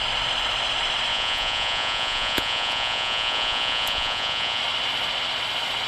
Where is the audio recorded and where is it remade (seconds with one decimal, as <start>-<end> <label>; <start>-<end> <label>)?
0.0-1.1 recorded; 1.1-4.6 remade; 4.6-5.9 recorded

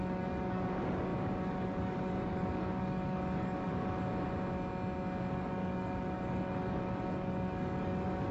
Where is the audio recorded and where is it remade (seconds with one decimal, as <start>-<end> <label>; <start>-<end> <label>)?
0.0-4.1 remade; 4.1-5.3 recorded; 5.3-8.3 remade

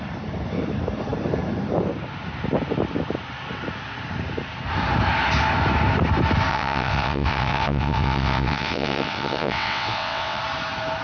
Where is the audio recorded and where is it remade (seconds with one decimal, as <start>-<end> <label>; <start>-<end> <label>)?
0.0-6.5 recorded; 6.5-10.4 remade; 10.4-11.0 recorded

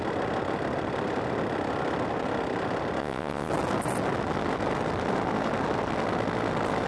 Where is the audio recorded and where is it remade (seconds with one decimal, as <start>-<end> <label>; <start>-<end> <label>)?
0.0-3.0 recorded; 3.0-3.5 remade; 3.5-6.9 recorded

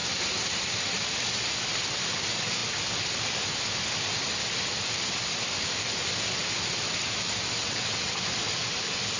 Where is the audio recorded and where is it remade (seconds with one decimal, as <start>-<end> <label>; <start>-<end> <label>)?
0.0-7.6 recorded; 7.6-8.1 remade; 8.1-9.2 recorded

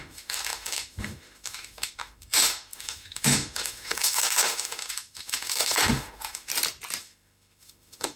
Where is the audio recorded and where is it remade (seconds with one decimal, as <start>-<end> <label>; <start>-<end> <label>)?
0.0-6.5 remade; 6.5-7.0 recorded; 7.0-8.2 remade

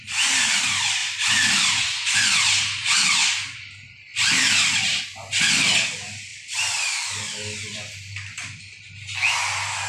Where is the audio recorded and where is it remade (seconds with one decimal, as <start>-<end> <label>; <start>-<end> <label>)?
0.0-1.0 recorded; 1.0-1.8 remade; 1.8-4.1 recorded; 4.1-5.0 remade; 5.0-6.3 recorded; 6.3-8.9 remade; 8.9-9.9 recorded

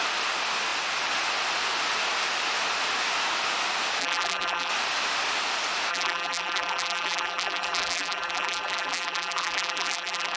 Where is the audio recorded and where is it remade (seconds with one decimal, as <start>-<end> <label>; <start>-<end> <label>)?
0.0-4.0 recorded; 4.0-4.7 remade; 4.7-5.9 recorded; 5.9-10.4 remade